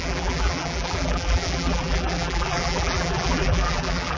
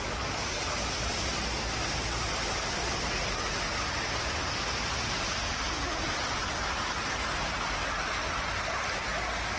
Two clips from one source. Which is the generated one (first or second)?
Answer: first